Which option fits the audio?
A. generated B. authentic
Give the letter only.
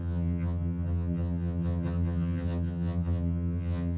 A